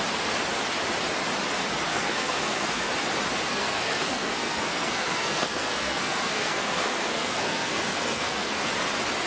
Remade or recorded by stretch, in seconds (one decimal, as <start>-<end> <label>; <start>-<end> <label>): 0.0-1.9 recorded; 1.9-2.9 remade; 2.9-3.5 recorded; 3.5-8.7 remade; 8.7-9.3 recorded